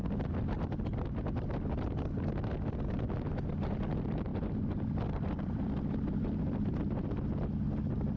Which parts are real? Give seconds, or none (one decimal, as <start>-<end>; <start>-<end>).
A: 0.0-4.3; 5.7-8.2